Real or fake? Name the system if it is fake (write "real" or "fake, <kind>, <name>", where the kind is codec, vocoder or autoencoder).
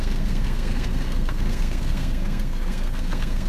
fake, codec, SNAC